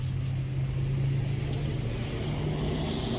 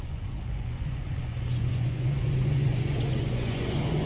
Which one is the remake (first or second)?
second